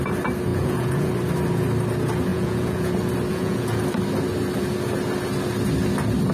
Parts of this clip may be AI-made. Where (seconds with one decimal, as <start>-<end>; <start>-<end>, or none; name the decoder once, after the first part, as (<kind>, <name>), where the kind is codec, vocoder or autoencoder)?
0.5-1.1 (vocoder, Vocos); 2.3-2.9; 3.3-3.8